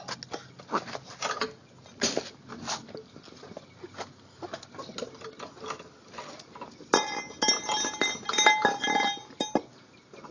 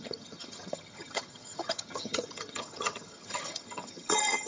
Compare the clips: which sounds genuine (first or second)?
first